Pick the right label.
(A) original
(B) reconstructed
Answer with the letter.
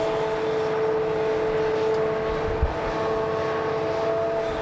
A